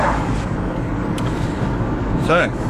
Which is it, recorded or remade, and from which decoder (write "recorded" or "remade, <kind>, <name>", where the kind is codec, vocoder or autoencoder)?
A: remade, codec, DAC